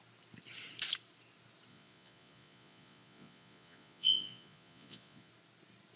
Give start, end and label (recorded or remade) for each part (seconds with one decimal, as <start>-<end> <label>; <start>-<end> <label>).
0.0-1.7 recorded; 1.7-5.3 remade; 5.3-6.0 recorded

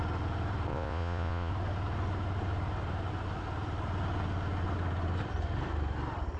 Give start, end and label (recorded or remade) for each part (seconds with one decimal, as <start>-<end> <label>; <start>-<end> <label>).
0.0-0.7 recorded; 0.7-1.5 remade; 1.5-6.4 recorded

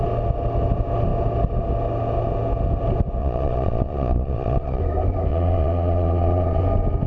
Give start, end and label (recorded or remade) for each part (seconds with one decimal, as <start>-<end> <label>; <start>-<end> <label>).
0.0-3.2 recorded; 3.2-4.8 remade; 4.8-5.3 recorded; 5.3-6.6 remade; 6.6-7.1 recorded

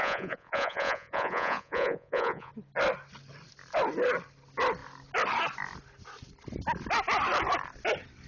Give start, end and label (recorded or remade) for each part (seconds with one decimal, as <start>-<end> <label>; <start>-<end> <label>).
0.0-2.5 remade; 2.5-8.3 recorded

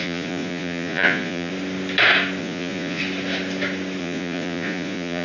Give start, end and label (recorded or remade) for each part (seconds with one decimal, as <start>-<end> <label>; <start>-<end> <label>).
0.0-1.5 remade; 1.5-2.4 recorded; 2.4-3.0 remade; 3.0-4.0 recorded; 4.0-5.2 remade

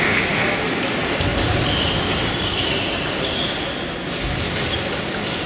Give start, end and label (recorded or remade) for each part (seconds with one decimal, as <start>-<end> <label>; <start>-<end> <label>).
0.0-5.5 recorded